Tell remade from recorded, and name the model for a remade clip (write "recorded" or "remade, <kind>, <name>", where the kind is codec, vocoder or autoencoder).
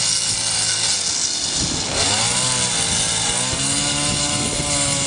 recorded